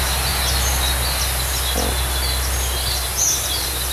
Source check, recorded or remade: recorded